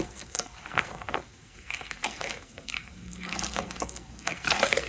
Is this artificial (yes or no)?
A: yes